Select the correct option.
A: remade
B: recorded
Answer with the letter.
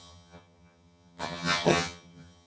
A